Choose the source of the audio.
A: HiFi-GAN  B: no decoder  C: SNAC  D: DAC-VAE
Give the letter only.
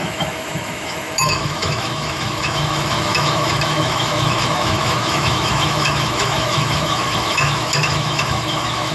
D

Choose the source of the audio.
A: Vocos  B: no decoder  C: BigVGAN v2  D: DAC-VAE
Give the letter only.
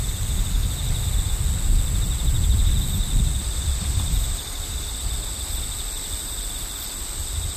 B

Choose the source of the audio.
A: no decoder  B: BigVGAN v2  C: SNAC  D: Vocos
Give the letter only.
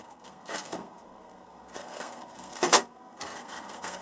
C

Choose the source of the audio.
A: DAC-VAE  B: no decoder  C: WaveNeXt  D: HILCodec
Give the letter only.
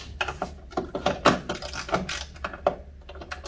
B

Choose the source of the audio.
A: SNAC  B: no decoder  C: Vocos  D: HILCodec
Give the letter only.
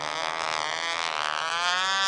B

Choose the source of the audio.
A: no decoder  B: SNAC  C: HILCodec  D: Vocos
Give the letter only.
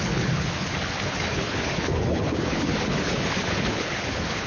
C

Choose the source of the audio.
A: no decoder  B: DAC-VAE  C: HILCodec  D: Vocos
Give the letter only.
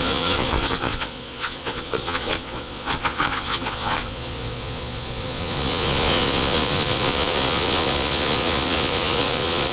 D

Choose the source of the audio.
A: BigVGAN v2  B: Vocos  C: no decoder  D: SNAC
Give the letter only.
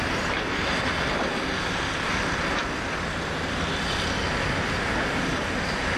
C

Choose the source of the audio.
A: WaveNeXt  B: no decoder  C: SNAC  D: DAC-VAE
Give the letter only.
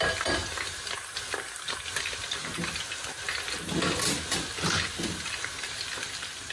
B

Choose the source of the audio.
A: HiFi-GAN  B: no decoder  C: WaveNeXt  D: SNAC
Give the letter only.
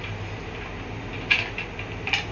B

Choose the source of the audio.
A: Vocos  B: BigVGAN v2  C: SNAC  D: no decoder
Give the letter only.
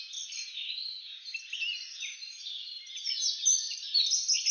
D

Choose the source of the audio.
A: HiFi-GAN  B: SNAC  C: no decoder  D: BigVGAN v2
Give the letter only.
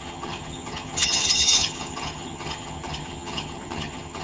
A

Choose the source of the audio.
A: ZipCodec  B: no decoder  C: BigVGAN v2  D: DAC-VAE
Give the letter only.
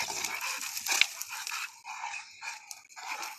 B